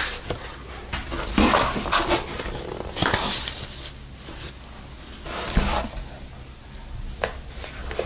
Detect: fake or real real